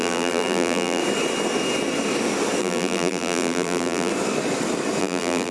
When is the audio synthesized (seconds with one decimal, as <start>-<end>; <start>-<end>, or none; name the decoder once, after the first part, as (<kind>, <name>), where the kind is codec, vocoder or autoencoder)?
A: 0.0-1.0 (vocoder, BigVGAN v2); 2.6-4.1; 5.0-5.5